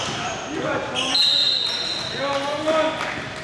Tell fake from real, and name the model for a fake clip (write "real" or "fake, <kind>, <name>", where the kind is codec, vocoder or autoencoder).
real